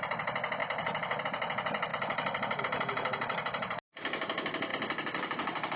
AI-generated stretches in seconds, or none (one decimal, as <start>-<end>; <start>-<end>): 0.6-1.2